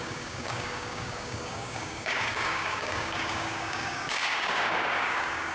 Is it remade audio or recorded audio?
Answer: remade